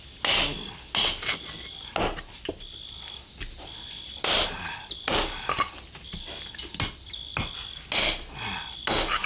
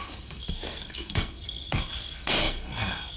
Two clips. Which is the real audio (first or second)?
first